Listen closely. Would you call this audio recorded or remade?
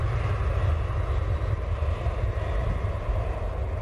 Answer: recorded